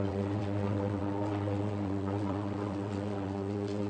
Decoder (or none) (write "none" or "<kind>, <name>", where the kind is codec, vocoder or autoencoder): vocoder, WaveNeXt